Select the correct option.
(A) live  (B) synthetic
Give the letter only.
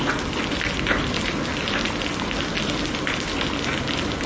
A